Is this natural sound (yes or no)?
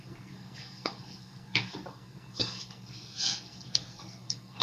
no